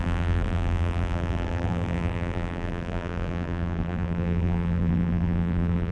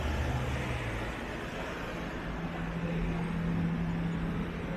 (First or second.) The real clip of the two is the second